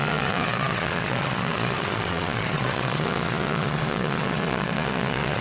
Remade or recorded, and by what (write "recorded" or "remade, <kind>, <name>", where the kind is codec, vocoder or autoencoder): remade, vocoder, Vocos